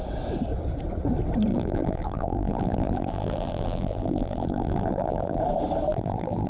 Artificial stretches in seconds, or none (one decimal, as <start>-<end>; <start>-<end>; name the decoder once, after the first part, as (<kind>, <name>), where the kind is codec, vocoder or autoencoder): 1.5-5.4 (vocoder, BigVGAN v2); 5.9-6.5